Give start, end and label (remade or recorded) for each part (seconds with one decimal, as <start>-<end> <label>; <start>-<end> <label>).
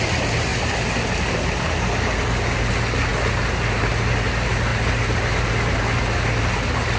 0.0-7.0 recorded